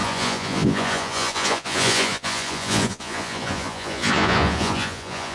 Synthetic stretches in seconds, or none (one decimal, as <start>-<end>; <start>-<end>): 0.0-5.3